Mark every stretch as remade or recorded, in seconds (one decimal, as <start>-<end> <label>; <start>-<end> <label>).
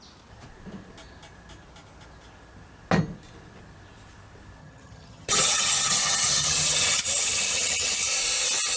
0.0-4.6 recorded; 4.6-8.1 remade; 8.1-8.8 recorded